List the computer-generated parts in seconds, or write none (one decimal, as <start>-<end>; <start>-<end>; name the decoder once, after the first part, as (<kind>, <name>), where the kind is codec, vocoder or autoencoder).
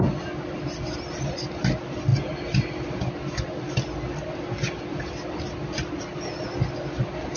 none